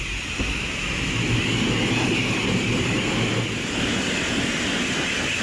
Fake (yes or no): no